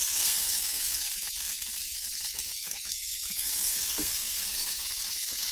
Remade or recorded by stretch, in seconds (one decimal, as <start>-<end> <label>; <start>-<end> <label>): 0.0-5.5 remade